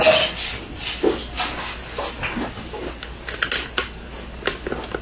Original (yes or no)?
yes